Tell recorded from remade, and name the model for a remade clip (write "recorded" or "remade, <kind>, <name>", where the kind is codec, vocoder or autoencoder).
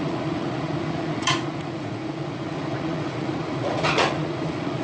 remade, vocoder, Vocos